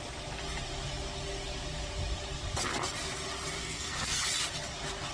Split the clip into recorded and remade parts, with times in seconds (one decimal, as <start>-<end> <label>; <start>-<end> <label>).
0.0-3.6 recorded; 3.6-4.2 remade; 4.2-5.1 recorded